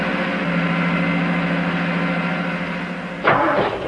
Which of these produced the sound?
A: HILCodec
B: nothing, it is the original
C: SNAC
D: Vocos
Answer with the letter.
B